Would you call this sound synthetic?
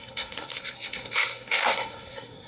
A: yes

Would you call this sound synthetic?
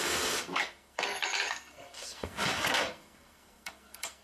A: yes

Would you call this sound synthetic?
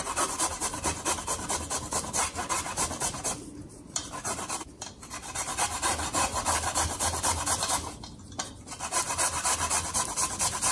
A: no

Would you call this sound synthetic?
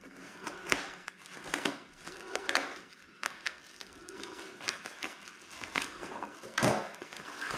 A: yes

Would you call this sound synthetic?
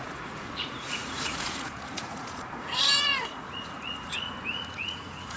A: yes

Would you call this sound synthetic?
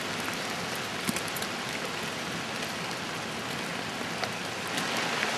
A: no